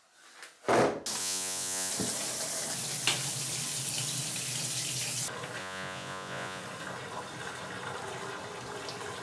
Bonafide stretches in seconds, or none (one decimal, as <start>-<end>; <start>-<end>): 0.0-1.2; 1.9-5.6; 6.6-9.2